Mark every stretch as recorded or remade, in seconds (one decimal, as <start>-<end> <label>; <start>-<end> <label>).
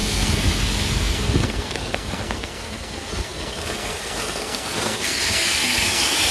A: 0.0-6.3 remade